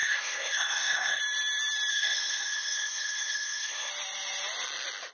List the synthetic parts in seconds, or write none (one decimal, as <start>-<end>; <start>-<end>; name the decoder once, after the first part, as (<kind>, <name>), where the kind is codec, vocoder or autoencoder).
0.0-1.2 (codec, SNAC); 1.9-3.9